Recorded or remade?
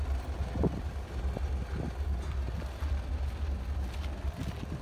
recorded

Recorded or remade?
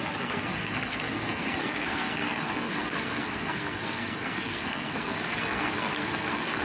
remade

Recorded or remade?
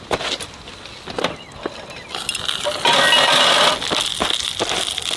recorded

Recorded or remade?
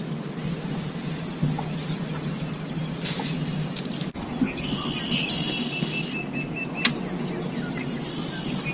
recorded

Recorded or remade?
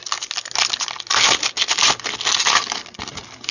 recorded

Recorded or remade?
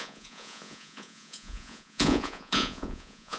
remade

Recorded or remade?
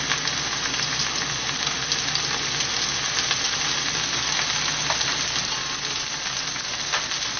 recorded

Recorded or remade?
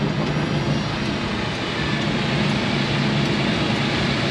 recorded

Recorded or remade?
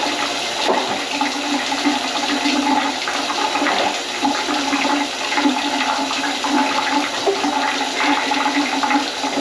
recorded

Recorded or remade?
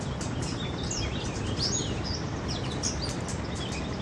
recorded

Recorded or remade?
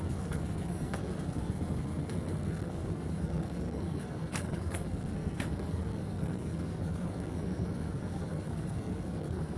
remade